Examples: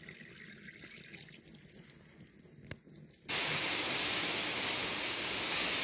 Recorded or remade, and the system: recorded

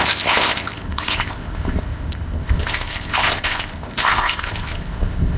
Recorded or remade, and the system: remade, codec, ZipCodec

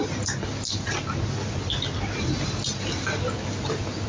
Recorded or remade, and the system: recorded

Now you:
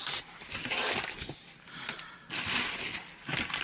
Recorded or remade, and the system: recorded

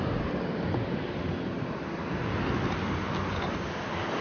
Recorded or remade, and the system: recorded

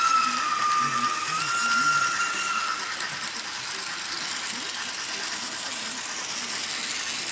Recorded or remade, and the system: recorded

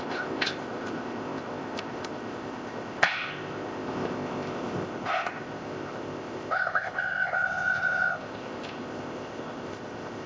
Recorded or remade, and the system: remade, codec, ZipCodec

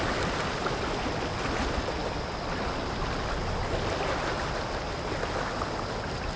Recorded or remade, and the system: recorded